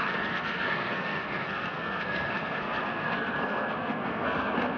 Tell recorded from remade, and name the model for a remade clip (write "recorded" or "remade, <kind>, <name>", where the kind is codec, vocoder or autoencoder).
remade, codec, SNAC